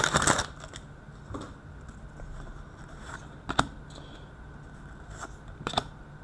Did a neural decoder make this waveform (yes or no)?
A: no